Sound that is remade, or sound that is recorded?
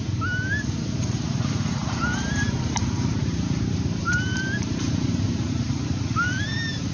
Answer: remade